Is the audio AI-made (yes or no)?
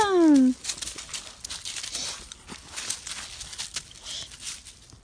no